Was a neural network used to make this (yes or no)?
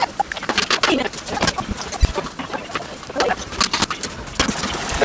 no